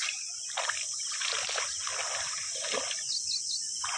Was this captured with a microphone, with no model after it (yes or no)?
yes